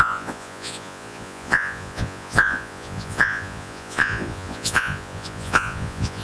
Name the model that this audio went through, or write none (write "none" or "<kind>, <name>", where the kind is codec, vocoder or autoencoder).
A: vocoder, Vocos